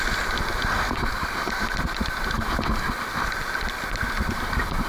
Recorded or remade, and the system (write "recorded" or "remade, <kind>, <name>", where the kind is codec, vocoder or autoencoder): recorded